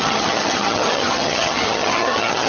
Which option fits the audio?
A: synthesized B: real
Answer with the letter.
A